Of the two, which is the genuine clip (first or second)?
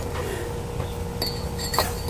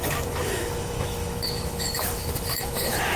first